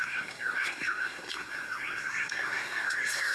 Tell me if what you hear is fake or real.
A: fake